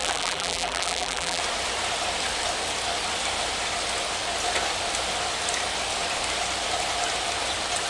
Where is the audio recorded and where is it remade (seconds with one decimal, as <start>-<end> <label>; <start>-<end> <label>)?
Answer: 0.0-1.4 remade; 1.4-7.9 recorded